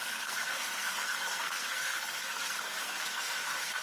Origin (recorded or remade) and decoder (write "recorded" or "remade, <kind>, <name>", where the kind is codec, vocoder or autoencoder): remade, codec, SNAC